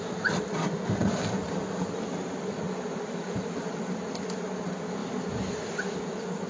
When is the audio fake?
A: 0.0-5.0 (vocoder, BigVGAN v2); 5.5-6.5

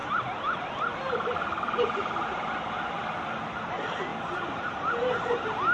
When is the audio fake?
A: 4.1-4.9 (vocoder, BigVGAN v2)

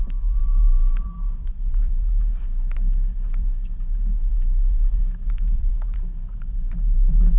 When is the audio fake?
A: 0.0-7.4 (vocoder, BigVGAN v2)

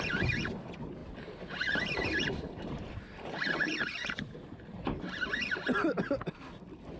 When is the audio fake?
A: 1.0-5.0 (vocoder, BigVGAN v2)